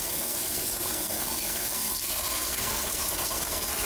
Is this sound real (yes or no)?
no